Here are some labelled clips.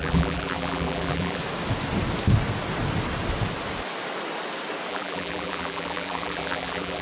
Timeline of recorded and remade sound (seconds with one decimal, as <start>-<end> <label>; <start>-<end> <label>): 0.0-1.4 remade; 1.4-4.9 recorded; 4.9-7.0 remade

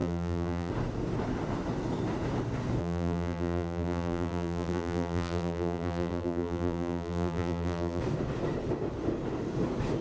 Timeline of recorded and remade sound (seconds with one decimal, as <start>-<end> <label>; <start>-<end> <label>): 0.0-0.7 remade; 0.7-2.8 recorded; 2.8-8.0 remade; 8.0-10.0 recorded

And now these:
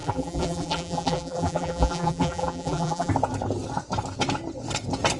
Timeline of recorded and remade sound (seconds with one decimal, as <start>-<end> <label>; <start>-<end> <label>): 0.0-3.1 remade; 3.1-5.2 recorded